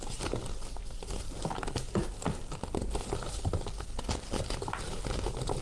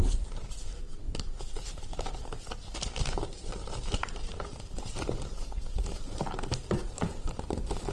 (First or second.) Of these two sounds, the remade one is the second